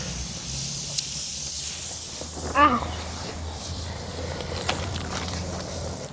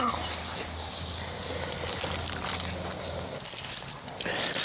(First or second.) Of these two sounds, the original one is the second